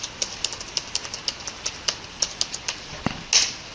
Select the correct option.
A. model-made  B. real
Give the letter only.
B